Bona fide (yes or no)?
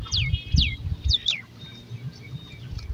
no